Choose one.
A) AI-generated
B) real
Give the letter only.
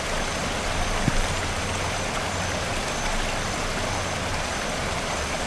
B